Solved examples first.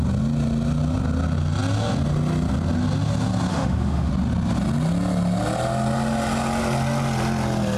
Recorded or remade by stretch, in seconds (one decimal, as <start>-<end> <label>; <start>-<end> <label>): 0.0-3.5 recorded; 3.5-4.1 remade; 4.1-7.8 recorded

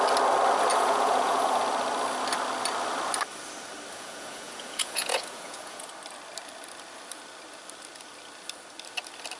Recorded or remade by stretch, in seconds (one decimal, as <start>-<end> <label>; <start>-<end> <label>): 0.0-0.7 recorded; 0.7-1.6 remade; 1.6-3.9 recorded; 3.9-5.9 remade; 5.9-9.4 recorded

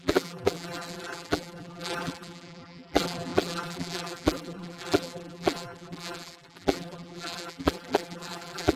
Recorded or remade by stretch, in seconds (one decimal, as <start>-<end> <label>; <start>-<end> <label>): 0.0-8.8 remade